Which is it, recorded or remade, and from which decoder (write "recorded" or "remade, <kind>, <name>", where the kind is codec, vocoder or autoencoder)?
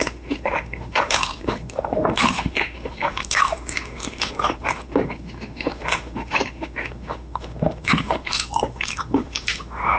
remade, autoencoder, DAC-VAE